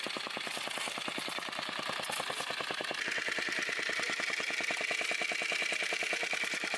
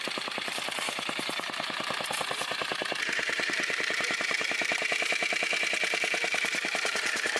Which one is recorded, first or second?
first